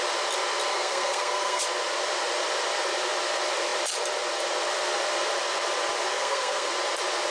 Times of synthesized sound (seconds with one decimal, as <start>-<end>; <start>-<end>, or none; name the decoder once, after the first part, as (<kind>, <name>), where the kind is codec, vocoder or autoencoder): 0.7-1.6 (codec, SNAC); 6.1-6.7